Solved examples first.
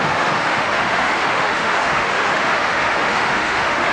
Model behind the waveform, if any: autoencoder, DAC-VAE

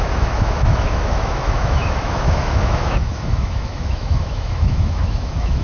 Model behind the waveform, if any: autoencoder, DAC-VAE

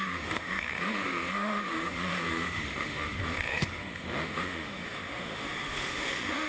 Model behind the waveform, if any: autoencoder, DAC-VAE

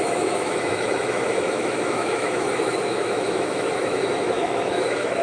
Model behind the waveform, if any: autoencoder, DAC-VAE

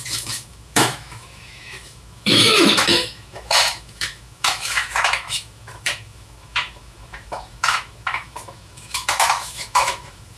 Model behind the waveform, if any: autoencoder, DAC-VAE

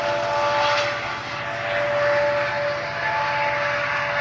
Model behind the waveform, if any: none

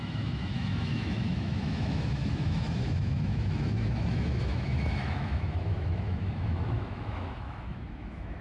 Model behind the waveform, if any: autoencoder, DAC-VAE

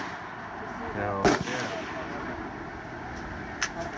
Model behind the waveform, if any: none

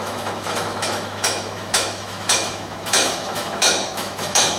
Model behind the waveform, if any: autoencoder, DAC-VAE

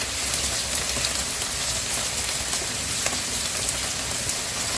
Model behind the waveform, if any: none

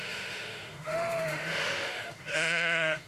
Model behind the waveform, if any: autoencoder, DAC-VAE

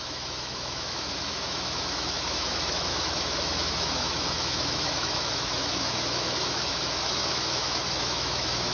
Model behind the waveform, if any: autoencoder, DAC-VAE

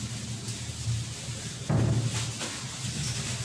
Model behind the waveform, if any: none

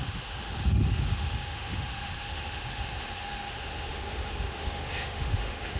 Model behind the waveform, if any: autoencoder, DAC-VAE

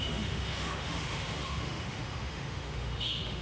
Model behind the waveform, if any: autoencoder, DAC-VAE